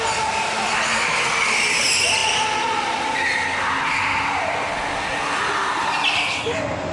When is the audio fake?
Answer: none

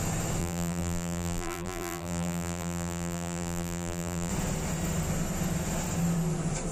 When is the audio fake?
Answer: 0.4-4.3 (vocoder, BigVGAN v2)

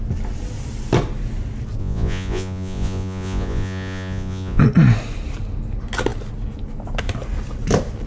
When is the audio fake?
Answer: 1.8-4.6 (vocoder, Vocos)

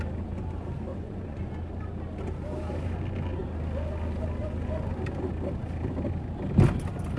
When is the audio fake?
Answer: 0.9-1.5 (vocoder, Vocos)